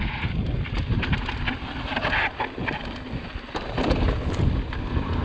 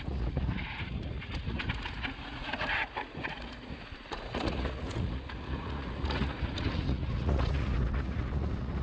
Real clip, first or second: first